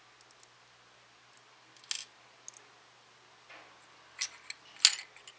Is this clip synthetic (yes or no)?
no